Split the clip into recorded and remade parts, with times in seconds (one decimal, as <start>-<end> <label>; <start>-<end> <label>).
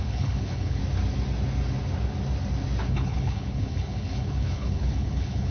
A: 0.0-0.8 remade; 0.8-2.9 recorded; 2.9-5.5 remade